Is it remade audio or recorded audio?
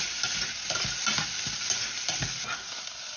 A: recorded